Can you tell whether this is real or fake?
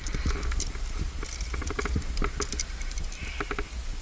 real